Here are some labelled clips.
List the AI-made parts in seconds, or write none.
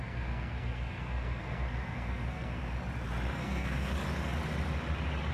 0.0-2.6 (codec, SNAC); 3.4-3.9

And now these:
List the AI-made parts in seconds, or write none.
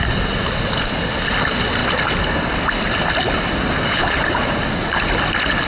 none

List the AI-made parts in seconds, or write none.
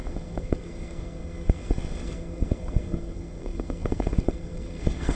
0.0-5.1 (codec, SNAC)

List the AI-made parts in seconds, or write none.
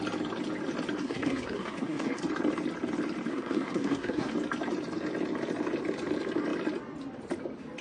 1.0-2.2 (codec, SNAC); 3.3-4.3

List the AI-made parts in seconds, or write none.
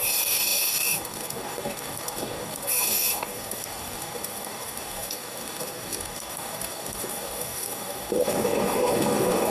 0.0-9.5 (codec, DAC)